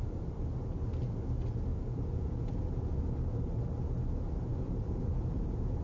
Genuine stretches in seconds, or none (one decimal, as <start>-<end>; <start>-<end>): 0.0-1.7; 2.5-4.5